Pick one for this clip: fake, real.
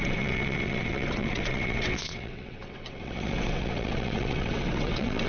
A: fake